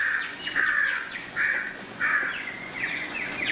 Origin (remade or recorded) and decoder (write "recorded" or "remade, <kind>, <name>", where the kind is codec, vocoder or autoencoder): remade, vocoder, Vocos